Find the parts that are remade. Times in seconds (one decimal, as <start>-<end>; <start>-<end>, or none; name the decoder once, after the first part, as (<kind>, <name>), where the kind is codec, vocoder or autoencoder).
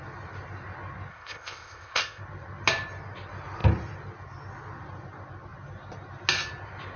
1.1-2.2 (codec, ZipCodec)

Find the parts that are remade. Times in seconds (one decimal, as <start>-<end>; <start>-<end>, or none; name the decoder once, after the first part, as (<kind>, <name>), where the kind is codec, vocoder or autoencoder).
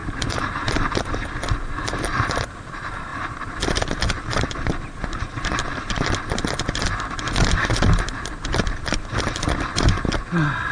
0.0-1.3 (vocoder, BigVGAN v2)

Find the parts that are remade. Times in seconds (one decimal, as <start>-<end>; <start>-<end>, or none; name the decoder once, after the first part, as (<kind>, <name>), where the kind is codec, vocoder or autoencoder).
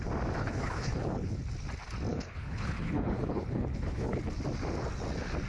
0.4-1.4 (codec, HILCodec); 2.1-4.2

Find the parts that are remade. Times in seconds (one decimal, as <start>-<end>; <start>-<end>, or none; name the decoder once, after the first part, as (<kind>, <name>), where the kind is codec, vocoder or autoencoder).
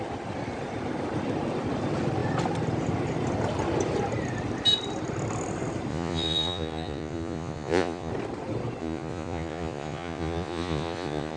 5.9-8.1 (vocoder, Vocos); 8.8-11.4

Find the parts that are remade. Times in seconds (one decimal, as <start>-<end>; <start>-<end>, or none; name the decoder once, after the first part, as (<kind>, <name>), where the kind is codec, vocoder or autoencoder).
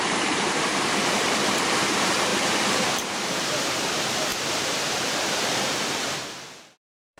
0.0-7.2 (vocoder, BigVGAN v2)